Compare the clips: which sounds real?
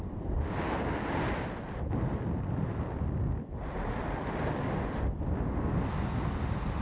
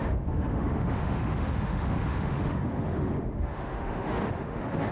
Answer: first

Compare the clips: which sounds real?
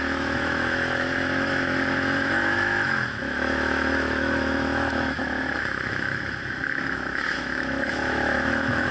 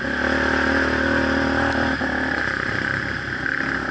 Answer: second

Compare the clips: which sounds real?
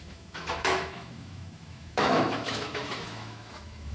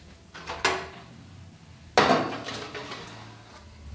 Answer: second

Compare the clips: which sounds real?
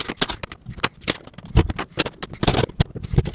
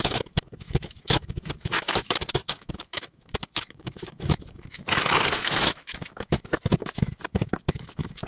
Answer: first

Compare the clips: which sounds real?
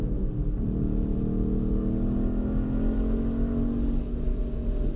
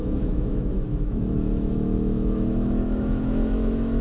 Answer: first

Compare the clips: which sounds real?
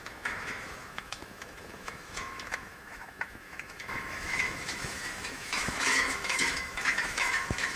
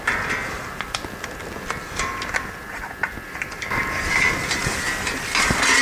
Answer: second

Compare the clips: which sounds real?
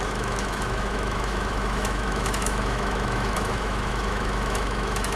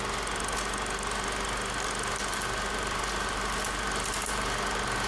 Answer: second